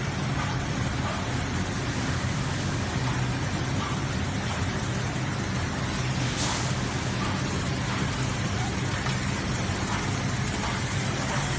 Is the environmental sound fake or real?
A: real